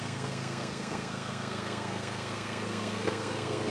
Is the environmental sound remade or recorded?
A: remade